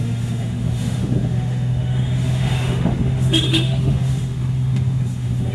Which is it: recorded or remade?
remade